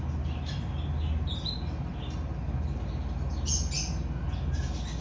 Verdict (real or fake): real